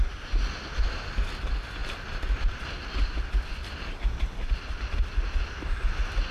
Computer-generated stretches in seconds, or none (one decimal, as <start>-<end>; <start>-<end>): none